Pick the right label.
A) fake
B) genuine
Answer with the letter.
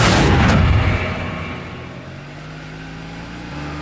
B